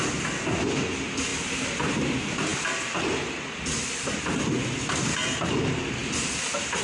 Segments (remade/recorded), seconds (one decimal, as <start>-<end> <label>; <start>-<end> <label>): 0.0-6.8 recorded